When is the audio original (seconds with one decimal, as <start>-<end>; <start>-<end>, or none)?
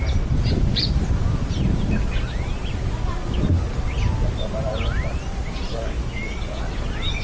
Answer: 0.0-5.7; 6.6-7.2